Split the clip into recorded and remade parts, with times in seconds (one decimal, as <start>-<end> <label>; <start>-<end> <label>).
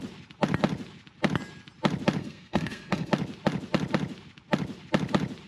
0.0-2.2 recorded; 2.2-3.1 remade; 3.1-5.5 recorded